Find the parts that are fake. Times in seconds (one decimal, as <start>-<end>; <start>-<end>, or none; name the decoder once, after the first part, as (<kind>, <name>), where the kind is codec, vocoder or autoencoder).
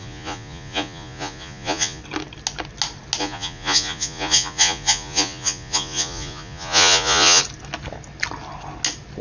0.0-2.0 (vocoder, Vocos); 3.2-7.4